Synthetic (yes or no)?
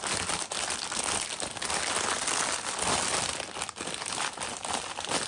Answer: no